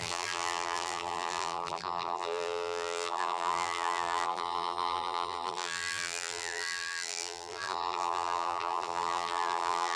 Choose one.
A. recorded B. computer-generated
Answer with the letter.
B